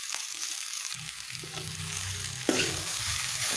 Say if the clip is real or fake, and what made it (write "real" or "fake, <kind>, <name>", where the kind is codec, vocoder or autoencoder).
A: fake, codec, DAC